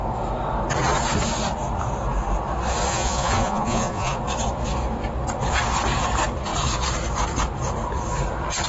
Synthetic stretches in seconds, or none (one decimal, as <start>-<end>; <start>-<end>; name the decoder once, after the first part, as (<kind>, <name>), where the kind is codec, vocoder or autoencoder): 2.9-4.2 (vocoder, Vocos)